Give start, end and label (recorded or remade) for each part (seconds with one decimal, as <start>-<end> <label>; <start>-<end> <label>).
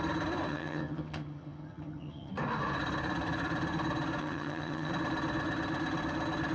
0.0-0.5 recorded; 0.5-2.3 remade; 2.3-4.2 recorded; 4.2-4.9 remade; 4.9-6.5 recorded